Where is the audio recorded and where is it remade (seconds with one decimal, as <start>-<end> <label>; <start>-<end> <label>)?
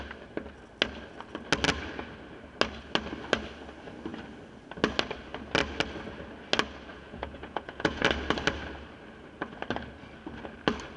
0.0-6.9 recorded; 6.9-8.0 remade; 8.0-11.0 recorded